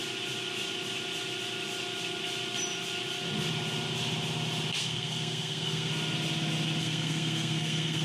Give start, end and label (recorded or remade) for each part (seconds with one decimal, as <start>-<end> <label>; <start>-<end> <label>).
0.0-4.8 recorded; 4.8-5.9 remade; 5.9-6.8 recorded; 6.8-8.0 remade